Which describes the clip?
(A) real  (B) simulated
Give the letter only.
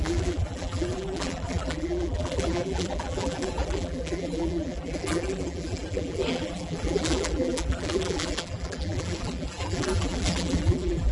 B